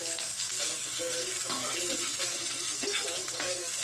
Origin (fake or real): fake